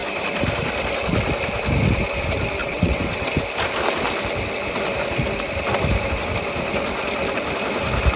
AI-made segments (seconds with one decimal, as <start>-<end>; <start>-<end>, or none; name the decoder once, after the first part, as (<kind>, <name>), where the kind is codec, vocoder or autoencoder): 2.6-3.3 (vocoder, WaveNeXt)